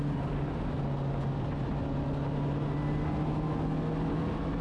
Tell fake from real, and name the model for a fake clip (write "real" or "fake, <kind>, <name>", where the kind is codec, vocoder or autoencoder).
real